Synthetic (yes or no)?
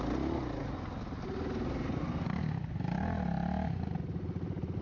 no